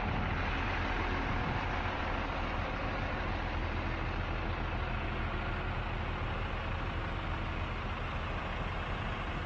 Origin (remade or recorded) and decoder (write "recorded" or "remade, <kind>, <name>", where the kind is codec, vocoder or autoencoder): recorded